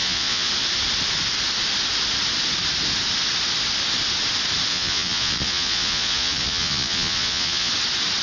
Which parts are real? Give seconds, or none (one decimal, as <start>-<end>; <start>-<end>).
0.5-4.7; 7.7-8.2

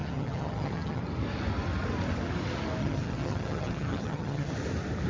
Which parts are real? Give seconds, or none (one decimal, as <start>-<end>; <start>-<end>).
1.0-2.8; 4.5-5.1

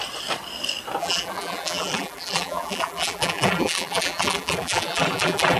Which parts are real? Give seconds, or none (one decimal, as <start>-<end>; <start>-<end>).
0.0-1.0

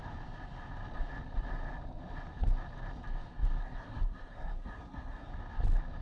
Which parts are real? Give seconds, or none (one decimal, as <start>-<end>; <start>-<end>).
0.0-3.6; 5.3-6.0